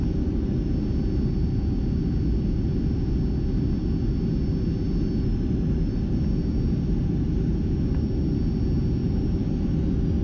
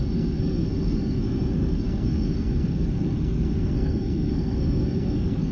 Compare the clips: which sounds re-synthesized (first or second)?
second